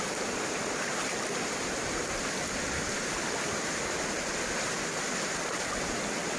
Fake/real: fake